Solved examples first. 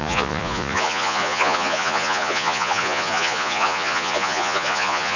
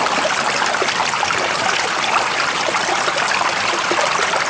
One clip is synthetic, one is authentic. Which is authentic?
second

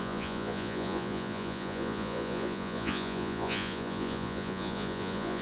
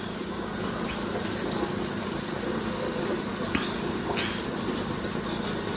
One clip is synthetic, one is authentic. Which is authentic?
second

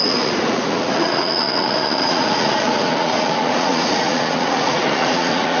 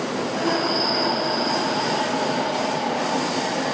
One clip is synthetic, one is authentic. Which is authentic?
second